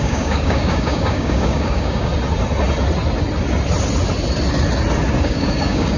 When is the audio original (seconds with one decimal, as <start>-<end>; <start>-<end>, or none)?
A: 2.1-5.2